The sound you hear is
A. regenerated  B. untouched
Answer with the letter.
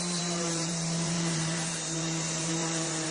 A